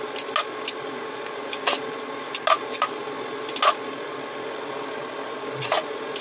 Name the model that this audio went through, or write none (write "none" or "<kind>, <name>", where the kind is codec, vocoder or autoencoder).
none